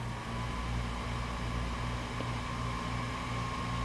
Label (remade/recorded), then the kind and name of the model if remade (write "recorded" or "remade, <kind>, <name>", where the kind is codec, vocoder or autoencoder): recorded